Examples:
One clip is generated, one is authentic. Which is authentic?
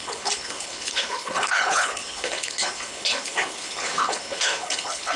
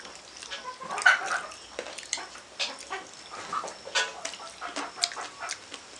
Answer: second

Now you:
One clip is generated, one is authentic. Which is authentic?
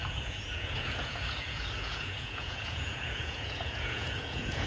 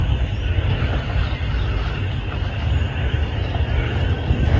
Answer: second